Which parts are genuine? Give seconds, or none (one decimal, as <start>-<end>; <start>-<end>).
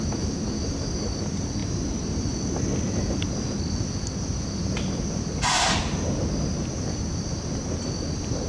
0.0-8.5